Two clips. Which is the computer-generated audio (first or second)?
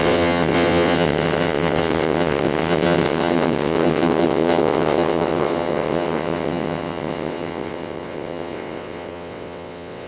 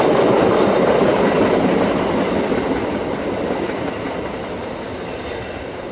first